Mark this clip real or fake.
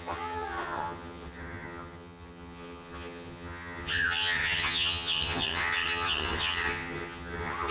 fake